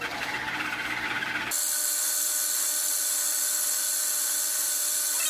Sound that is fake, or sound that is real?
real